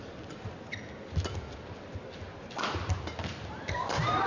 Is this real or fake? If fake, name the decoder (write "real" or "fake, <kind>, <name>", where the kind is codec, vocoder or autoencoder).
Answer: real